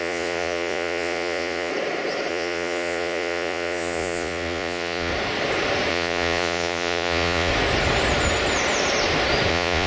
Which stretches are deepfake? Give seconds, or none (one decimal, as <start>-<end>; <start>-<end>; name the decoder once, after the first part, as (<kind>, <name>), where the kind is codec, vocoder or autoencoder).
0.0-1.7 (vocoder, Vocos); 2.3-5.1; 5.9-7.5; 9.5-9.9